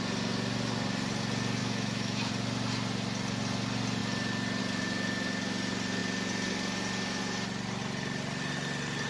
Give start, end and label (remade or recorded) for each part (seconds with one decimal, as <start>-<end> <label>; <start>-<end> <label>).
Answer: 0.0-1.6 recorded; 1.6-2.3 remade; 2.3-9.1 recorded